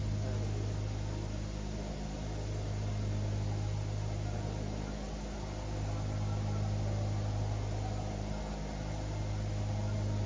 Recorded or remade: recorded